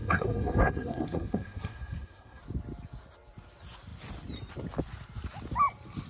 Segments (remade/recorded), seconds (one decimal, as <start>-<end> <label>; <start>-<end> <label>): 0.0-2.4 remade; 2.4-6.1 recorded